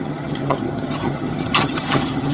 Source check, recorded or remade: remade